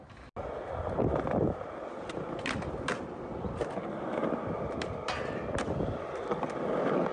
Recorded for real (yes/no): yes